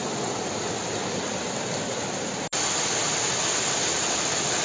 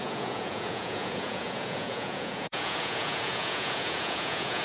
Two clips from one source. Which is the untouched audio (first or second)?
first